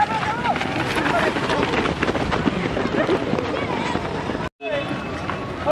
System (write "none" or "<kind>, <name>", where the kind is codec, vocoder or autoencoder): none